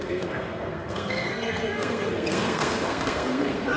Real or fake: fake